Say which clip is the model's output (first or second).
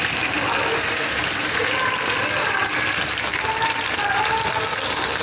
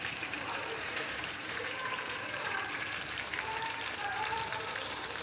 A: second